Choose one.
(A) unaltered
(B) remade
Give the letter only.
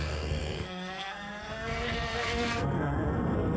B